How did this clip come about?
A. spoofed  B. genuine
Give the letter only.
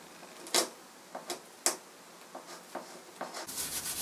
B